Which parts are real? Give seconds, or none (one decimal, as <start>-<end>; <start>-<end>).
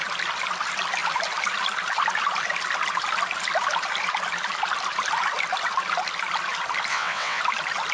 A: 0.0-6.9; 7.4-7.9